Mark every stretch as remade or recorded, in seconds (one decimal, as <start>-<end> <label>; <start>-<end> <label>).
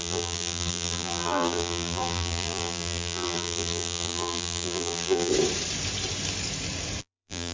0.0-5.3 remade; 5.3-7.0 recorded; 7.0-7.5 remade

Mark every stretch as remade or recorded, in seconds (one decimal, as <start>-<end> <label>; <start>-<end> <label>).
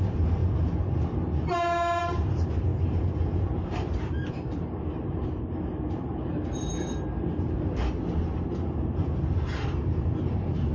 0.0-0.4 remade; 0.4-2.0 recorded; 2.0-6.7 remade; 6.7-8.2 recorded; 8.2-10.7 remade